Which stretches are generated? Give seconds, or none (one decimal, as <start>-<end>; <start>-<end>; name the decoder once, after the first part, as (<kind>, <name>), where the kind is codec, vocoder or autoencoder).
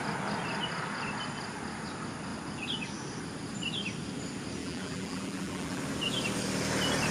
4.6-5.8 (vocoder, BigVGAN v2)